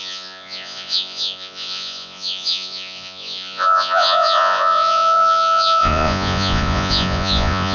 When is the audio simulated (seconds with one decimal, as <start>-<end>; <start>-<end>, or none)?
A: 0.0-7.7